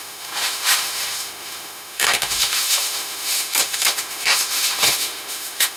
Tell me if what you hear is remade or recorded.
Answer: remade